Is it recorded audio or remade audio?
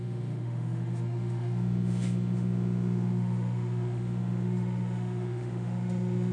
remade